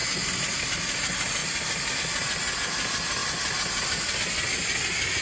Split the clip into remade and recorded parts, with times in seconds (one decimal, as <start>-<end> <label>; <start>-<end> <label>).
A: 0.0-5.2 recorded